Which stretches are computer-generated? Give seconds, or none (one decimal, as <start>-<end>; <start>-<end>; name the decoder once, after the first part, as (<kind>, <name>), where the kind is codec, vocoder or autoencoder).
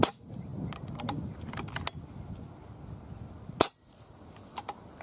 none